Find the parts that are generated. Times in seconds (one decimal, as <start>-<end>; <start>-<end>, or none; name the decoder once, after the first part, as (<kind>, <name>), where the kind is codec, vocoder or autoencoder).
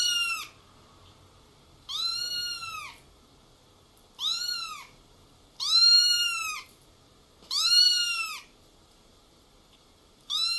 0.0-2.1 (vocoder, BigVGAN v2); 3.1-10.6